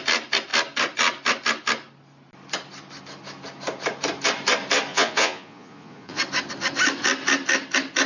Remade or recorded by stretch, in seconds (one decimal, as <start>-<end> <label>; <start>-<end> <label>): 0.0-4.9 recorded; 4.9-6.2 remade; 6.2-8.1 recorded